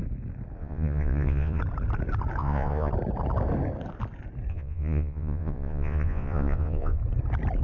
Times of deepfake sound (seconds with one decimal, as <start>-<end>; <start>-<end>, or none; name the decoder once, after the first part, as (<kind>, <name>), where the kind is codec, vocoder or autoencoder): 0.6-1.6 (vocoder, Vocos); 2.4-2.9; 4.5-7.0